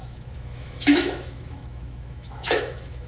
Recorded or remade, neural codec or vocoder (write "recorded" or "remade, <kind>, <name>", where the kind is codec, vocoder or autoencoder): remade, autoencoder, DAC-VAE